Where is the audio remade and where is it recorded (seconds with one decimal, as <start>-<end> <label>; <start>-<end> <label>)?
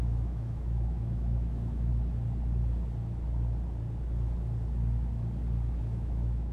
0.0-1.9 remade; 1.9-5.8 recorded; 5.8-6.5 remade